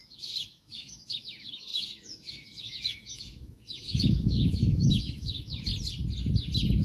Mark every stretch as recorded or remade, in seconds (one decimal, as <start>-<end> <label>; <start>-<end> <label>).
0.0-5.7 remade; 5.7-6.8 recorded